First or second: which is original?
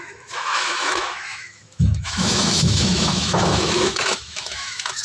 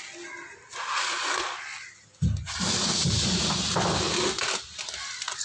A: second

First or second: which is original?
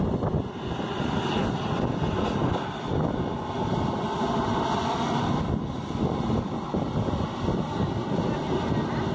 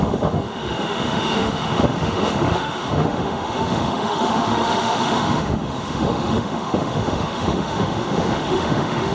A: first